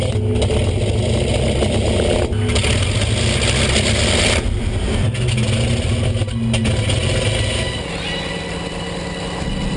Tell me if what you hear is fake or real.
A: real